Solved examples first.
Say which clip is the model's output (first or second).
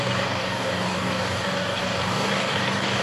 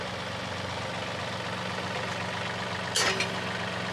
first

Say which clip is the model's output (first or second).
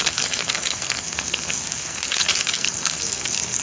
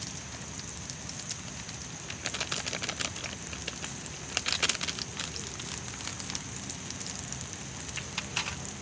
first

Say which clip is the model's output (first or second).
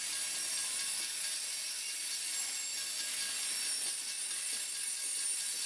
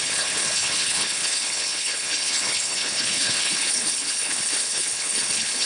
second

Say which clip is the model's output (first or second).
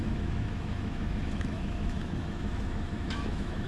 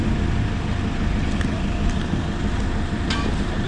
first